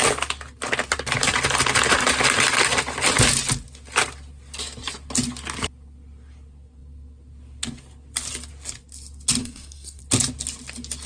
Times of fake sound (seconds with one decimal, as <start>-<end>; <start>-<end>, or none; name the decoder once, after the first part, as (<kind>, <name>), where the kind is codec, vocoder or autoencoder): 9.4-10.0 (codec, SNAC)